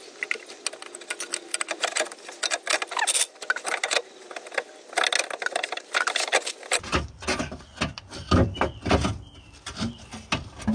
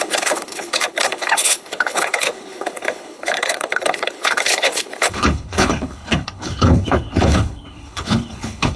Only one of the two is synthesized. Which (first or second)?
second